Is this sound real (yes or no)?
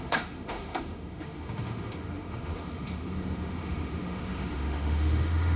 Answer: no